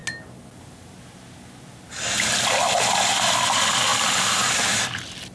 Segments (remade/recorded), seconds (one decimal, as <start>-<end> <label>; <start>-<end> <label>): 0.0-5.3 recorded